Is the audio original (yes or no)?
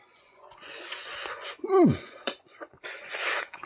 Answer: no